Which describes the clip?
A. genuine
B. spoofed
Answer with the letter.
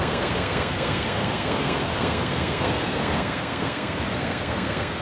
B